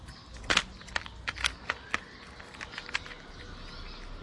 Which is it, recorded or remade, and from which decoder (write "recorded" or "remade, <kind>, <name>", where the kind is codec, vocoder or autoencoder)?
recorded